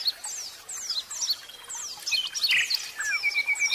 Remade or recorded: recorded